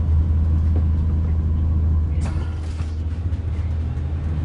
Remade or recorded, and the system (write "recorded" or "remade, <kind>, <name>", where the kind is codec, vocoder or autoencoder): recorded